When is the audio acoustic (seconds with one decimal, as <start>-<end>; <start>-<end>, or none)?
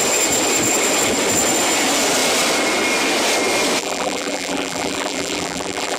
0.0-3.8